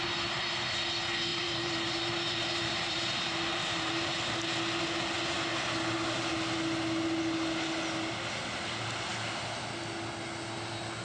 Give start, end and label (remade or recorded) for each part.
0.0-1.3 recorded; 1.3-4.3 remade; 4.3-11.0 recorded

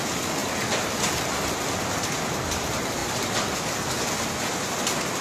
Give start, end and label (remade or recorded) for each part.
0.0-3.0 recorded; 3.0-5.2 remade

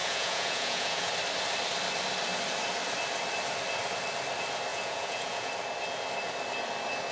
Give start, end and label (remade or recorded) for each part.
0.0-1.1 remade; 1.1-4.7 recorded; 4.7-5.5 remade; 5.5-7.1 recorded

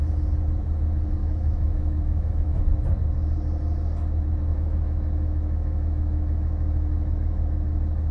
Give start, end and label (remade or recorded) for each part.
0.0-1.2 recorded; 1.2-2.6 remade; 2.6-4.5 recorded; 4.5-7.4 remade; 7.4-8.1 recorded

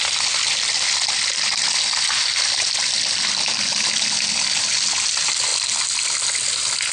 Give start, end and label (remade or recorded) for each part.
0.0-6.9 recorded

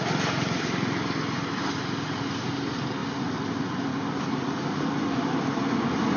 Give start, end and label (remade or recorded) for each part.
0.0-6.2 recorded

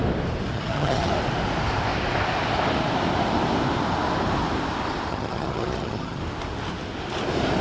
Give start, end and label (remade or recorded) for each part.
0.0-0.5 recorded; 0.5-1.1 remade; 1.1-5.1 recorded; 5.1-6.2 remade; 6.2-7.6 recorded